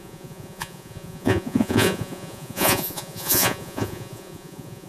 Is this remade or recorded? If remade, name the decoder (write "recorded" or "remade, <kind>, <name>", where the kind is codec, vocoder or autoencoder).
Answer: remade, vocoder, Vocos